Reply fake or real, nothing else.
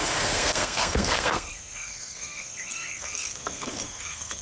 fake